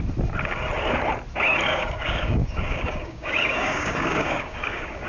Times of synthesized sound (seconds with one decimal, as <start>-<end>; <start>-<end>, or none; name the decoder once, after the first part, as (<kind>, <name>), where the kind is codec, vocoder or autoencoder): 1.7-5.1 (codec, DAC)